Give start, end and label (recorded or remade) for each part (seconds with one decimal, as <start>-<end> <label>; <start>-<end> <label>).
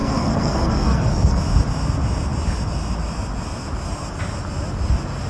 0.0-1.4 remade; 1.4-5.3 recorded